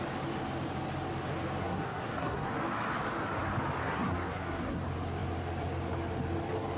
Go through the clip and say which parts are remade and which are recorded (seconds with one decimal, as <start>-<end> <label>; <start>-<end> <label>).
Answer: 0.0-1.6 recorded; 1.6-2.5 remade; 2.5-3.8 recorded; 3.8-4.8 remade; 4.8-6.8 recorded